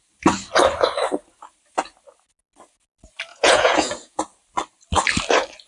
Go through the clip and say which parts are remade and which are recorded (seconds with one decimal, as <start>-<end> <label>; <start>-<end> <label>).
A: 0.0-3.3 recorded; 3.3-4.2 remade; 4.2-5.7 recorded